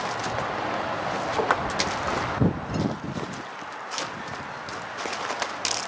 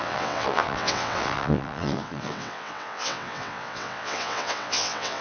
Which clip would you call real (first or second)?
first